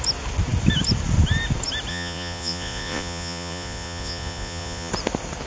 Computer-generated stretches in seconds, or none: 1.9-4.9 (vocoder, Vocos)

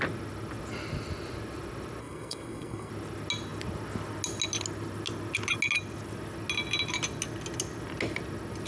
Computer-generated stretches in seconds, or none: 2.0-2.9 (codec, SNAC)

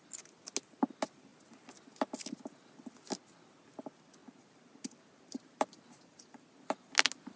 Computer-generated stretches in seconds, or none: 4.2-6.9 (vocoder, BigVGAN v2)

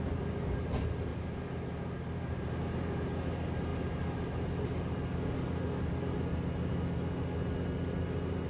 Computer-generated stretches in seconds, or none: 1.1-2.6 (vocoder, BigVGAN v2)